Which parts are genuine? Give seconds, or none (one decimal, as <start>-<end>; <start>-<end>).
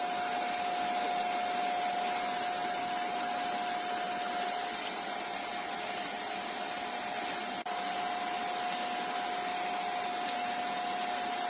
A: 0.0-11.5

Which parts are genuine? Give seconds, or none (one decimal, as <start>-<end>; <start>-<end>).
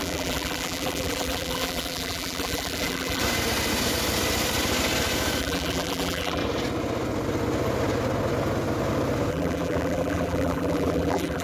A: 3.2-5.4; 6.4-9.3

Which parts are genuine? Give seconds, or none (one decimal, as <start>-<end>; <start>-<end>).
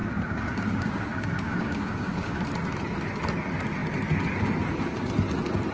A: 2.4-5.7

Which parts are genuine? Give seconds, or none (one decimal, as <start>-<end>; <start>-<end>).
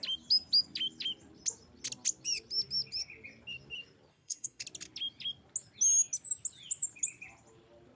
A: 0.0-4.1; 4.6-8.0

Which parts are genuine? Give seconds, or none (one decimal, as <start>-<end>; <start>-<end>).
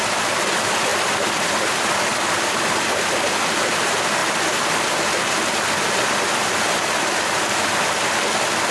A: 0.0-8.7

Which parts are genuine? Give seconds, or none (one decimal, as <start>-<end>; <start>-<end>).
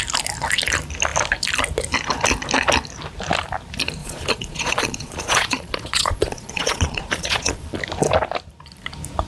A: 0.0-4.0; 7.8-9.3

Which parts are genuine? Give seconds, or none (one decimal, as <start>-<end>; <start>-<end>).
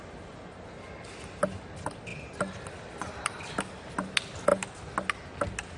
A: 0.0-2.1; 3.6-5.8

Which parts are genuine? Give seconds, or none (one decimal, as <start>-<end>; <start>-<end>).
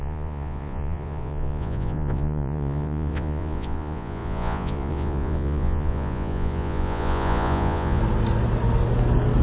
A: 8.0-9.4